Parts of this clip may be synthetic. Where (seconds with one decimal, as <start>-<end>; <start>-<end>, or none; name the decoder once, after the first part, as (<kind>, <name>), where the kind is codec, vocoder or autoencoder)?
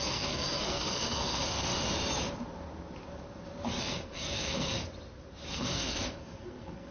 0.0-1.7 (codec, SNAC); 3.8-4.8; 5.5-6.9